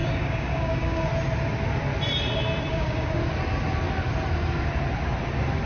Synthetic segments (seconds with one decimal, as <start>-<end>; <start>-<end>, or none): 0.0-1.1; 2.7-3.2